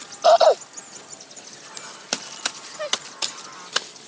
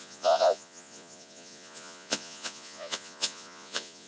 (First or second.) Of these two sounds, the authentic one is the first